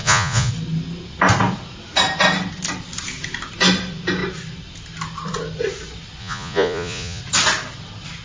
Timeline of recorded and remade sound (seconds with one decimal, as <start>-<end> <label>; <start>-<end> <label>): 0.0-0.5 remade; 0.5-6.2 recorded; 6.2-7.2 remade; 7.2-8.2 recorded